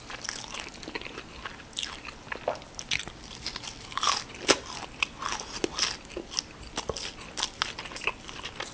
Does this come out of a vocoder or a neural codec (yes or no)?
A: no